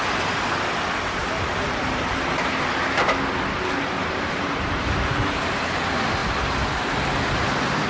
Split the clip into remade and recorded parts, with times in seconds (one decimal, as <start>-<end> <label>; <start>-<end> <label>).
0.0-1.2 recorded; 1.2-2.5 remade; 2.5-4.0 recorded; 4.0-4.7 remade; 4.7-7.9 recorded